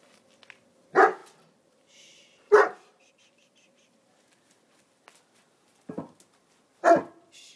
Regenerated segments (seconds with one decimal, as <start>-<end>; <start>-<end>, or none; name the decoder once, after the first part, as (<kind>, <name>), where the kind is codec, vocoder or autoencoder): none